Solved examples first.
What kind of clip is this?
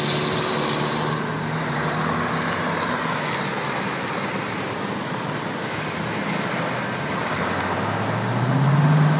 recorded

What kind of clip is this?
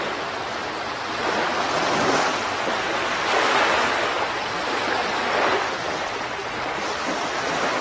remade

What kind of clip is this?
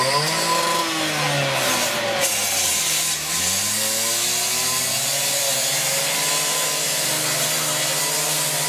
recorded